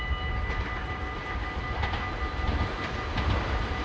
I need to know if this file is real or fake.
real